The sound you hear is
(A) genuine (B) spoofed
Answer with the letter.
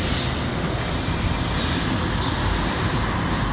A